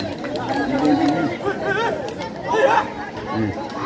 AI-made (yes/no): no